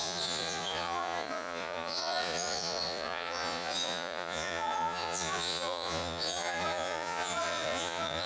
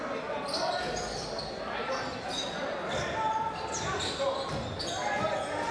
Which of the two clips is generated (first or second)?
first